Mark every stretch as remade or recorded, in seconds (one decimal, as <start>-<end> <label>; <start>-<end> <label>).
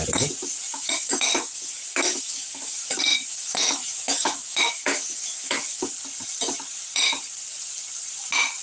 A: 0.0-0.7 recorded; 0.7-5.9 remade; 5.9-8.6 recorded